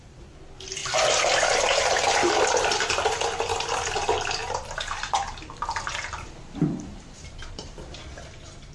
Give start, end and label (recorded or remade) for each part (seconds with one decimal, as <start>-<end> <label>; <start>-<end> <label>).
0.0-4.4 recorded; 4.4-8.0 remade; 8.0-8.7 recorded